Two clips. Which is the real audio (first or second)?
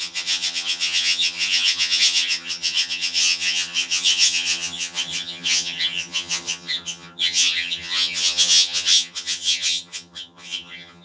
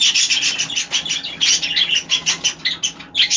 second